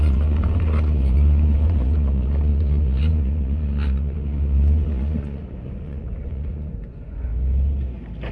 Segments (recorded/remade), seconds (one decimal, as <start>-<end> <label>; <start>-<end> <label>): 0.0-7.3 remade; 7.3-8.3 recorded